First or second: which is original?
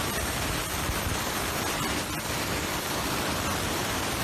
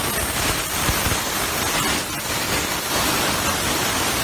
second